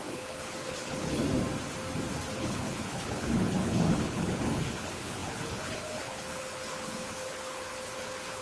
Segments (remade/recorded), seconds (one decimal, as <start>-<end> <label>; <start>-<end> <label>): 0.0-1.2 remade; 1.2-2.4 recorded; 2.4-8.4 remade